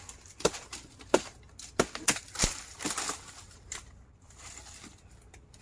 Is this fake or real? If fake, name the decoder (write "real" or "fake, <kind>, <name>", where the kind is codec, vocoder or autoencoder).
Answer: real